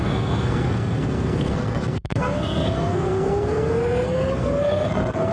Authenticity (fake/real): fake